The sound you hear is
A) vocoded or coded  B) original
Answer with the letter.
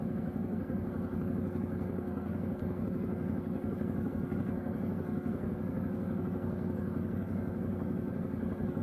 A